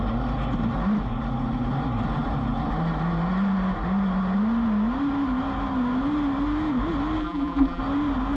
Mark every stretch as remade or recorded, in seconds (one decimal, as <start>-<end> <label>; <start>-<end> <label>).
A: 0.0-7.2 recorded; 7.2-7.8 remade; 7.8-8.4 recorded